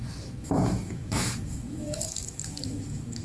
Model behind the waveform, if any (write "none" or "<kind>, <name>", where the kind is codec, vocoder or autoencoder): autoencoder, DAC-VAE